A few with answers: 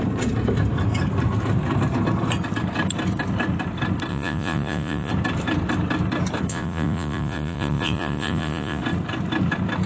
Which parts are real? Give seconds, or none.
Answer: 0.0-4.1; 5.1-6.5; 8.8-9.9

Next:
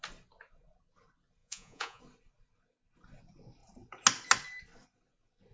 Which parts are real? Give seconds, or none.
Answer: 0.0-1.4; 2.0-5.5